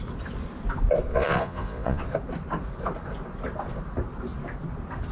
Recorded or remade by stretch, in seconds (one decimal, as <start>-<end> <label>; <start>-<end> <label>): 0.0-1.1 recorded; 1.1-2.0 remade; 2.0-5.1 recorded